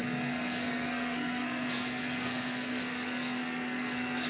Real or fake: fake